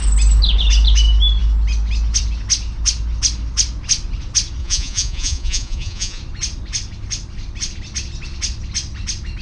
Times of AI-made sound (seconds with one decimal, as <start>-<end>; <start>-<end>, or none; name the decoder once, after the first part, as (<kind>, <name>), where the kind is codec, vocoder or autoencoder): 4.6-6.2 (vocoder, Vocos)